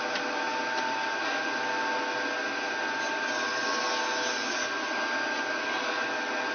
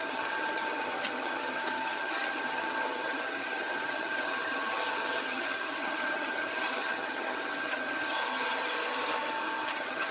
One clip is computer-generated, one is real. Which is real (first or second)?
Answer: first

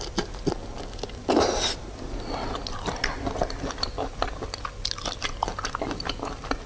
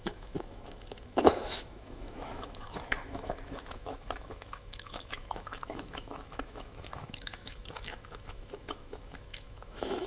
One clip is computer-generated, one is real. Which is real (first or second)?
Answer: first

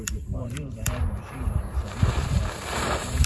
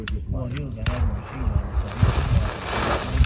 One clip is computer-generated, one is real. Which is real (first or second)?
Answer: second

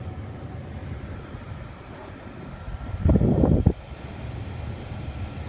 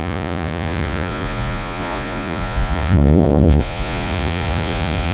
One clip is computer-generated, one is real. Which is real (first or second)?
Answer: first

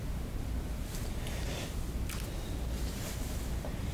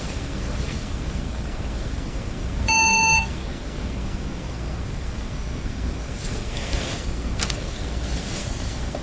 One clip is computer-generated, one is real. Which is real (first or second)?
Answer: first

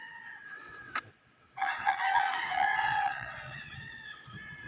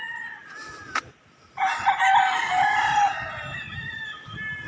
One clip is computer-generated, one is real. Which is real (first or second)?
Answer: second